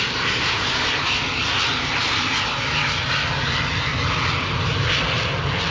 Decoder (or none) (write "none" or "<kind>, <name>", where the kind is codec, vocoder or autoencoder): none